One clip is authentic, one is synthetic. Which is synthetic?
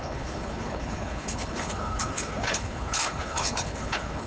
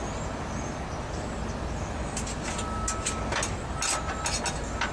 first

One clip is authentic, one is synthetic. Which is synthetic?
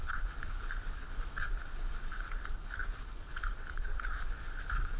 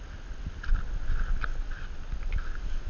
first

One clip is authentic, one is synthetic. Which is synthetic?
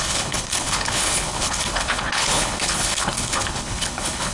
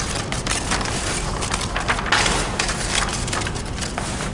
first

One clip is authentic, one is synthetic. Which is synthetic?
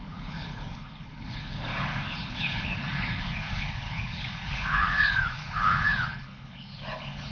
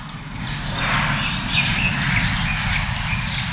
first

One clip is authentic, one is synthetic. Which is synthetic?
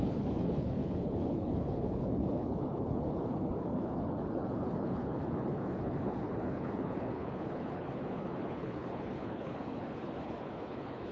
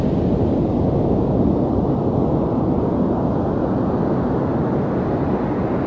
first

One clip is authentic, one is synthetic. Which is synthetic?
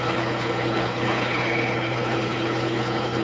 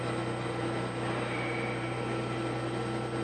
first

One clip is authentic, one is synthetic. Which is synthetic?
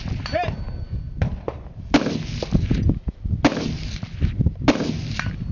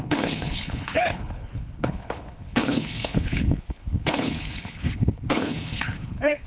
second